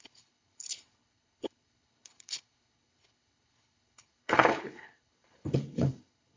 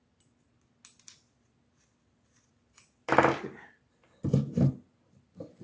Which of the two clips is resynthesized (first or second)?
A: first